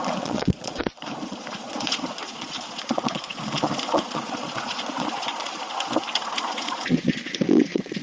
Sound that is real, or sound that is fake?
fake